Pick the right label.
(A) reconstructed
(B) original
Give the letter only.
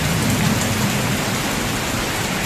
B